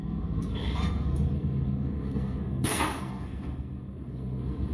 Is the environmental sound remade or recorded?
remade